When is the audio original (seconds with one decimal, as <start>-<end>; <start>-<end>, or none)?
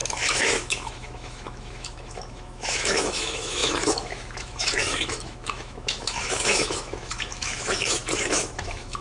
none